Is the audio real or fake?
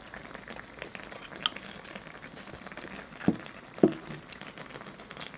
real